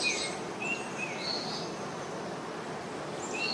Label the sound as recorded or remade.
recorded